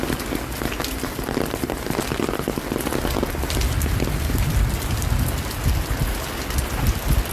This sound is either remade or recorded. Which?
recorded